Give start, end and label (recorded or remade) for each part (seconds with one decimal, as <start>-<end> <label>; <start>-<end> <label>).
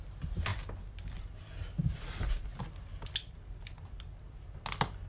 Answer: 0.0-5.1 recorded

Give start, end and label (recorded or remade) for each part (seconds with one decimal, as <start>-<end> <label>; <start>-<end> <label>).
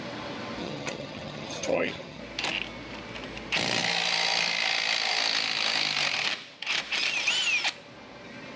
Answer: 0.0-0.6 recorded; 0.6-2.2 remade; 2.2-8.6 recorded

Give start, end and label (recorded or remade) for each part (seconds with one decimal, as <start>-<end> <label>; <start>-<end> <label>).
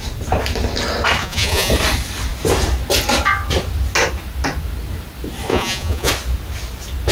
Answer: 0.0-1.2 recorded; 1.2-1.7 remade; 1.7-5.5 recorded; 5.5-6.1 remade; 6.1-7.1 recorded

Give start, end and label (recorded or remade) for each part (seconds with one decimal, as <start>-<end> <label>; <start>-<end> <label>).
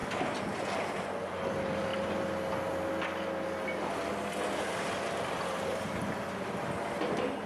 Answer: 0.0-7.5 recorded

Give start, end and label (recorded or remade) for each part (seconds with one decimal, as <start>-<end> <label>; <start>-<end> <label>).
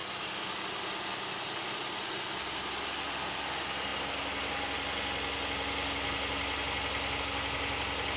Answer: 0.0-8.2 recorded